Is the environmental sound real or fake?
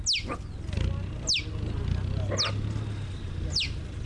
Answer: real